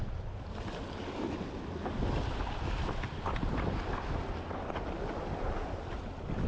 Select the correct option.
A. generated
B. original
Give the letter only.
B